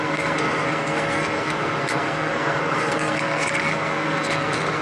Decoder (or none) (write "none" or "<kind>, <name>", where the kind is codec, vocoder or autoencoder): codec, SNAC